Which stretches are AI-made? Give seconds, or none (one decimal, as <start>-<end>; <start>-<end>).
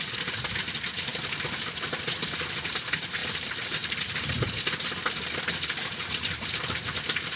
3.2-4.5